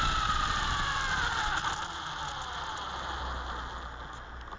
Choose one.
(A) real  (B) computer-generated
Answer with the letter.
A